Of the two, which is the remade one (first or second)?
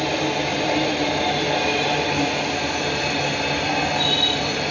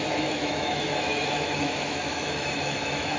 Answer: second